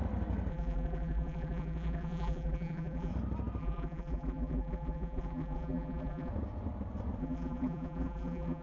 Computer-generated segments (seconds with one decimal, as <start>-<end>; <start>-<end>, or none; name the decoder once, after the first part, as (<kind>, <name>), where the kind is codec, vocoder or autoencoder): 0.5-3.1 (vocoder, BigVGAN v2); 3.6-6.3; 7.2-8.6